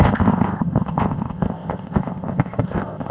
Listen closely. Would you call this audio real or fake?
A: fake